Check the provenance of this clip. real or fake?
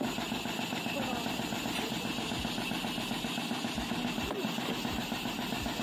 real